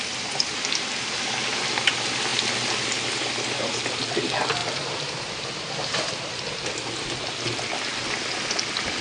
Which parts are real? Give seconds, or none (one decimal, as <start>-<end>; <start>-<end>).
0.0-4.6; 6.3-9.0